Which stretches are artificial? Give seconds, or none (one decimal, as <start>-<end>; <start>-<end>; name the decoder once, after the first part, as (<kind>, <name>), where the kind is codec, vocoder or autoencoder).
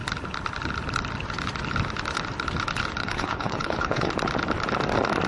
3.0-4.1 (codec, HILCodec)